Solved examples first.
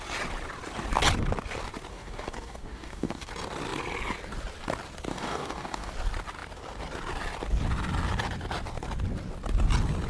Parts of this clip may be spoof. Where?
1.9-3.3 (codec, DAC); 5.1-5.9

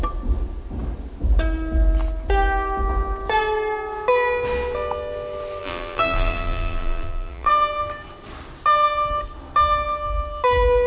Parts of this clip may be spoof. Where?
5.6-7.5 (vocoder, BigVGAN v2)

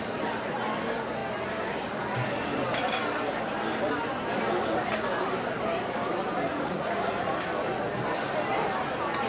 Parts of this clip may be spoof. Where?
6.5-7.3 (vocoder, Vocos)

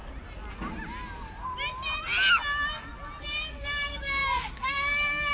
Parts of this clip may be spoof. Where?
3.2-5.3 (codec, DAC)

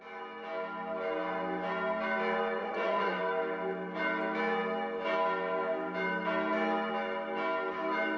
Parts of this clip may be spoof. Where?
2.6-3.2 (vocoder, WaveNeXt)

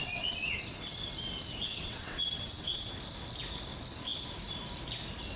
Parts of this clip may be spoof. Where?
0.0-0.6 (vocoder, WaveNeXt); 1.7-2.9